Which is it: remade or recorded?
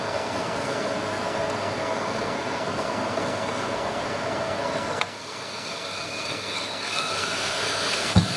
remade